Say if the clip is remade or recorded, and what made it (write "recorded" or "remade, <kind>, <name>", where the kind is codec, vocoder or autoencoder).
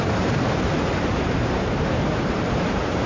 remade, vocoder, BigVGAN v2